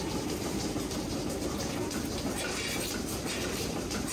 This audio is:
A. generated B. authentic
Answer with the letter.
B